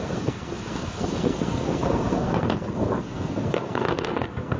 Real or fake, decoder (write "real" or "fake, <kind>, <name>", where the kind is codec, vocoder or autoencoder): fake, codec, SNAC